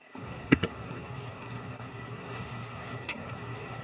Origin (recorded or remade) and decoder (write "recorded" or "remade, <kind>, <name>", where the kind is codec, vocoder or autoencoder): remade, codec, SNAC